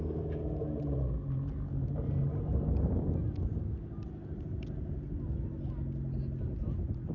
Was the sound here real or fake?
real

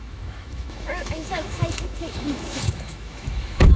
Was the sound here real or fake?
fake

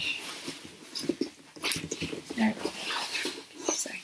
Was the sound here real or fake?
real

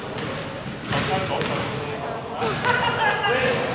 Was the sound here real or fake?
real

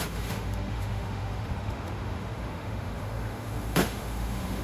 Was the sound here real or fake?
fake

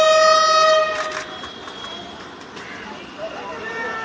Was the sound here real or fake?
real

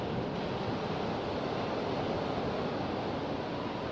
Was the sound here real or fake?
real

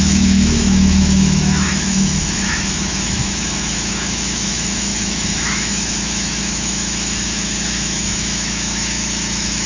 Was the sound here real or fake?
fake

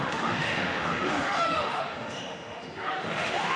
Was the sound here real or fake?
fake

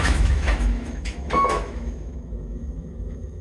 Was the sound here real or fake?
fake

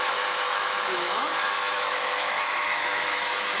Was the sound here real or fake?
fake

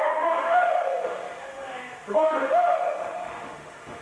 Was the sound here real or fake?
fake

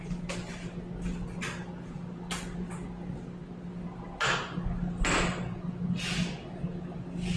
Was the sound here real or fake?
real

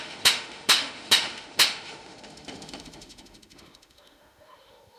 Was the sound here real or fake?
fake